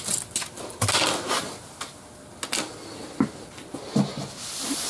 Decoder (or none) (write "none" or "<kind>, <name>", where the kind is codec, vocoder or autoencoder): none